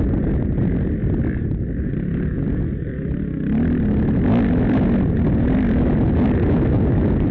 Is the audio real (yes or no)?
yes